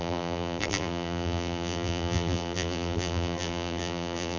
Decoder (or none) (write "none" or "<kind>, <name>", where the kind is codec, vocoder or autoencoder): vocoder, BigVGAN v2